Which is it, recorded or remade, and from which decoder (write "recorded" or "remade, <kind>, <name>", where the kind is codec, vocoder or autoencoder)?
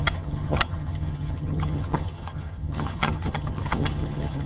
remade, vocoder, HiFi-GAN